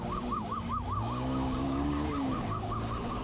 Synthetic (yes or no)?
yes